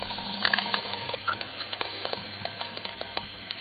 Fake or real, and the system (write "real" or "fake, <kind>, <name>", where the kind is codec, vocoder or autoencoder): fake, codec, SNAC